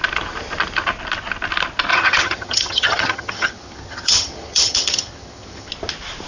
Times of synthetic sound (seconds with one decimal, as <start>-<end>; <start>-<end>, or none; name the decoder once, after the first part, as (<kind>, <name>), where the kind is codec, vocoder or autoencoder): 1.9-5.7 (vocoder, HiFi-GAN)